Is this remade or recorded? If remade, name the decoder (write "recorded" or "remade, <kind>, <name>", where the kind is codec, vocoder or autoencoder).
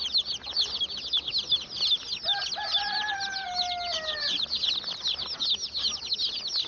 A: recorded